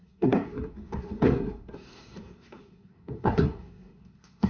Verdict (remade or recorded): remade